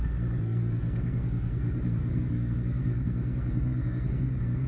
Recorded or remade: remade